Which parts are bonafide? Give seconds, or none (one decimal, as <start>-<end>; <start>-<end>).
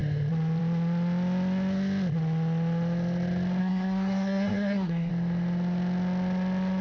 0.0-3.6; 5.1-6.8